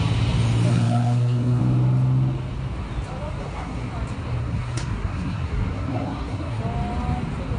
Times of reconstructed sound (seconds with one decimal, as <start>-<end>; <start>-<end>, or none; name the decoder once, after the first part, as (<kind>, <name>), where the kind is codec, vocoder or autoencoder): 0.7-1.6 (codec, SNAC); 3.4-3.9; 4.4-6.6